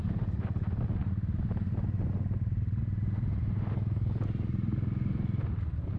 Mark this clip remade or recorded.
recorded